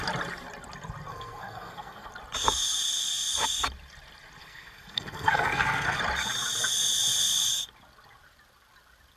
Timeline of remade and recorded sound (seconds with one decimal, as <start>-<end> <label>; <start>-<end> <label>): 0.0-1.1 recorded; 1.1-2.1 remade; 2.1-4.4 recorded; 4.4-6.0 remade; 6.0-9.2 recorded

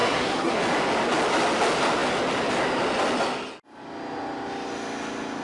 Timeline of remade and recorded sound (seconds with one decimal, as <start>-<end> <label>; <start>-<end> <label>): 0.0-0.6 remade; 0.6-5.4 recorded

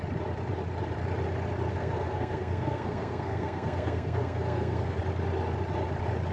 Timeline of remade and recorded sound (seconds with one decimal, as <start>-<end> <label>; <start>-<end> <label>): 0.0-1.7 recorded; 1.7-5.0 remade; 5.0-6.3 recorded

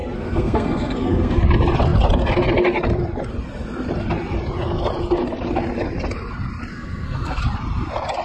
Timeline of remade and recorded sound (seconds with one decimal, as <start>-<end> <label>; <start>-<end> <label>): 0.0-1.4 remade; 1.4-6.7 recorded; 6.7-7.4 remade; 7.4-8.2 recorded

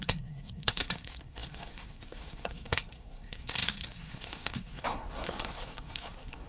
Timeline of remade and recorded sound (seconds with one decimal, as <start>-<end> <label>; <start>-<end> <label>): 0.0-6.5 remade

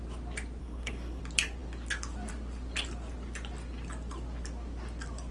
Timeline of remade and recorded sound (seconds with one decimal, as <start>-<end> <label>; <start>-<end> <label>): 0.0-0.6 recorded; 0.6-1.2 remade; 1.2-5.3 recorded